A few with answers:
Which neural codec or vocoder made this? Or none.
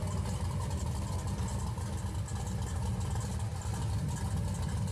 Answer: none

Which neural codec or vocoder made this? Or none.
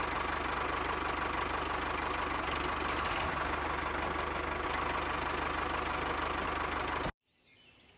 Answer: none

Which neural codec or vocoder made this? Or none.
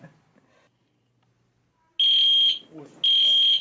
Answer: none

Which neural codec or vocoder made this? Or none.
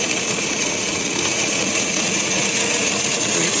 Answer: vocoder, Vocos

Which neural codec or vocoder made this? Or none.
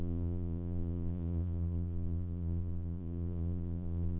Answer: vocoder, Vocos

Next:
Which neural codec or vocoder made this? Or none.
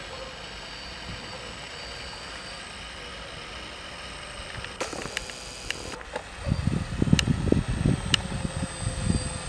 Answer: none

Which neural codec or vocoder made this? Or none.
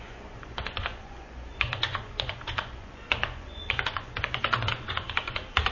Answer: vocoder, Vocos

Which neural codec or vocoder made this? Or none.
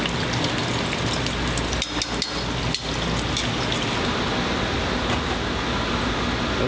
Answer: none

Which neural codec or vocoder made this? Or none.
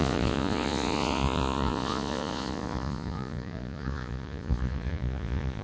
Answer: vocoder, Vocos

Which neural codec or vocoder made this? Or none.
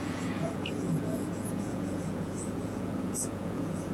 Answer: vocoder, Vocos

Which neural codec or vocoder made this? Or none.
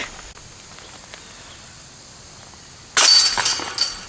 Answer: none